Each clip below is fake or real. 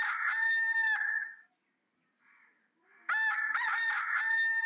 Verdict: real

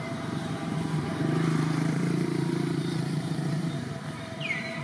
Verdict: fake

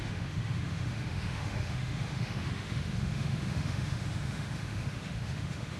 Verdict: fake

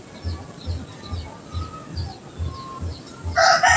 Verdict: real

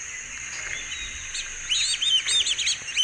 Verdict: real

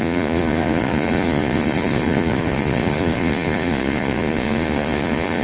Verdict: fake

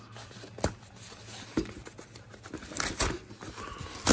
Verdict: real